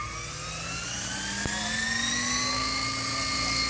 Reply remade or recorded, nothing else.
recorded